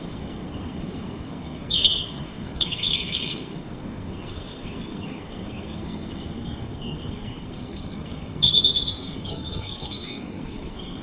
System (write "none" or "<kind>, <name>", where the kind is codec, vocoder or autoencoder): codec, SNAC